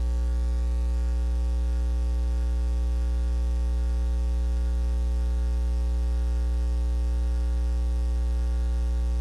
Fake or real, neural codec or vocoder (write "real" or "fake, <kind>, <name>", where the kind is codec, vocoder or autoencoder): real